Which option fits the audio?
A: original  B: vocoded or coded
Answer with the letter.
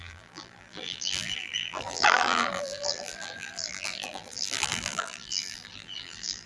B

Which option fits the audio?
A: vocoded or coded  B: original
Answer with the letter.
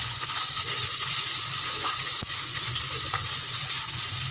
A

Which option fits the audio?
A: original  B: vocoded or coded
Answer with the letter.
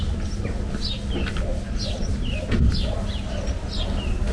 A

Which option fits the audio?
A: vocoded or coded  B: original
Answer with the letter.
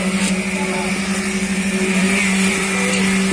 B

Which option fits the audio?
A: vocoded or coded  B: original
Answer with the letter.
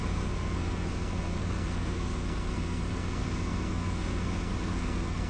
A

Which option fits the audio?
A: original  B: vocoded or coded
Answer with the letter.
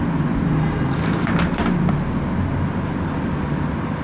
A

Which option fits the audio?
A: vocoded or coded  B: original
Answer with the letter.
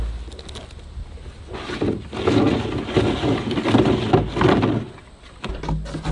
B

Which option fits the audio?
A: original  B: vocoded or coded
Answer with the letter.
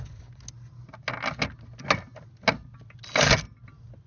A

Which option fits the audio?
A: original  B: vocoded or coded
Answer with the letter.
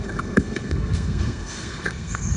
B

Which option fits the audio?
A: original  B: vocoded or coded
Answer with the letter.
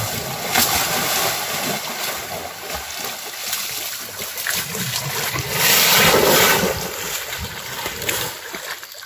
A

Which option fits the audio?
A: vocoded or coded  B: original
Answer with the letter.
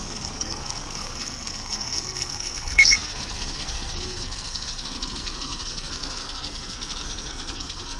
A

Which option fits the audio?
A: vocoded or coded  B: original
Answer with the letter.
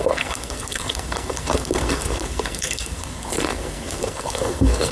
A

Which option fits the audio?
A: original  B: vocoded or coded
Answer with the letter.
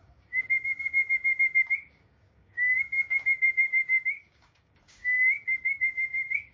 B